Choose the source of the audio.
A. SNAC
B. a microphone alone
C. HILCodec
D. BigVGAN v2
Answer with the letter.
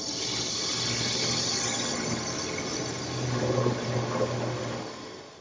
B